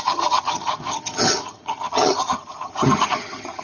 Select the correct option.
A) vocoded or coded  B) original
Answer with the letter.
A